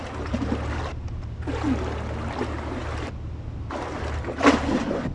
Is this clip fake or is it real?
real